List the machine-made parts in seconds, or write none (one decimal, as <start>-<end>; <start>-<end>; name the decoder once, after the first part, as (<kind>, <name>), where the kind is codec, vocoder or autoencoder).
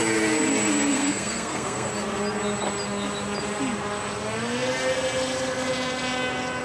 0.9-1.9 (codec, SNAC)